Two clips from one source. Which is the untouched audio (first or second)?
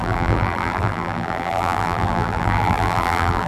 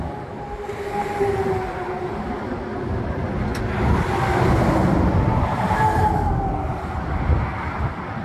second